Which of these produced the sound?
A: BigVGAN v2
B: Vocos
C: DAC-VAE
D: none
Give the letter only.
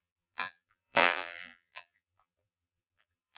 A